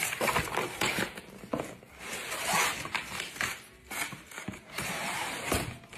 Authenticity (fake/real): fake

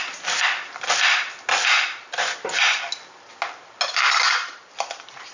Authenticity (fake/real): real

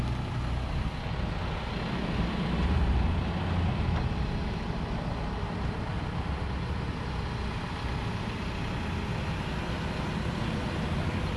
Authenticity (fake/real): real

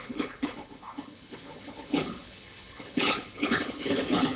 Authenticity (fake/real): fake